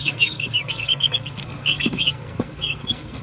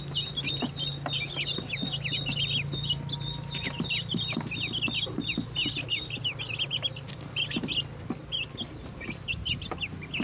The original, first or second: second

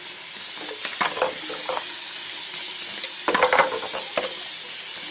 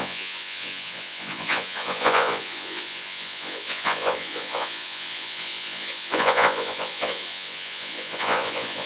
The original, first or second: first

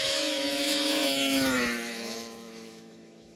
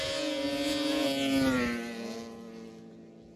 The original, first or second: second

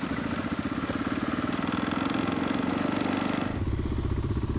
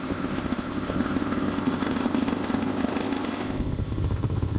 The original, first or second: first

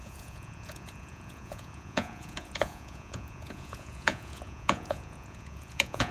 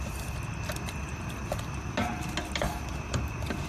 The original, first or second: second